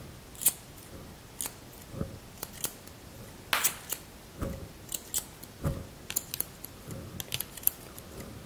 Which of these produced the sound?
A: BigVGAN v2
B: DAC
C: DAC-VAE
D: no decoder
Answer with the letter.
D